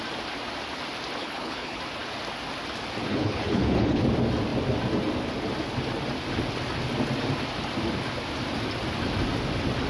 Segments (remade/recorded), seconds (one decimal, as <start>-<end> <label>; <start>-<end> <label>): 0.0-1.2 recorded; 1.2-1.8 remade; 1.8-3.1 recorded; 3.1-4.0 remade; 4.0-9.9 recorded